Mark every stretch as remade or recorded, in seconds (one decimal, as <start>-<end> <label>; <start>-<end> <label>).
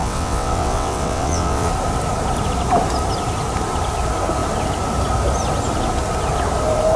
0.0-1.7 remade; 1.7-7.0 recorded